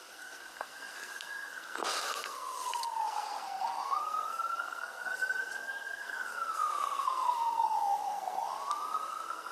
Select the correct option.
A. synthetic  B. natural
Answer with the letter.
A